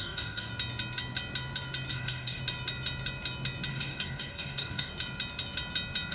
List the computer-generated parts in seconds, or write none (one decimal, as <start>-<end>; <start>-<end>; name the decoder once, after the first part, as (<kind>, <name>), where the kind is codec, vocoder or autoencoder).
0.0-0.5 (codec, DAC); 1.9-2.4; 3.7-4.9